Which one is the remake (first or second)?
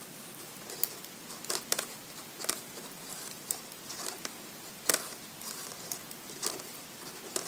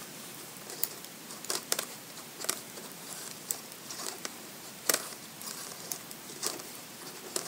second